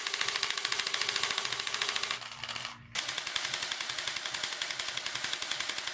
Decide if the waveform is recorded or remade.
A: recorded